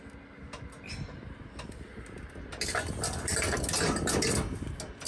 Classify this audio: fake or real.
real